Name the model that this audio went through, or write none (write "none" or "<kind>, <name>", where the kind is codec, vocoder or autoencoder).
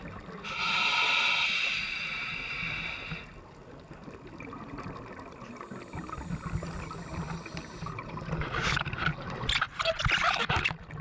none